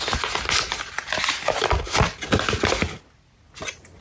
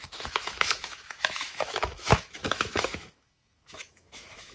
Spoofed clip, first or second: second